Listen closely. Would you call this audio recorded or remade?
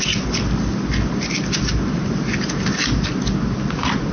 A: recorded